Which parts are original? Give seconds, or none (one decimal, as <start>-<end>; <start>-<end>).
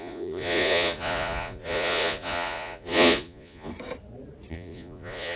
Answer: 3.7-4.5